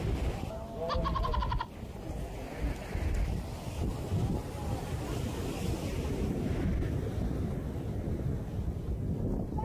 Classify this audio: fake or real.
real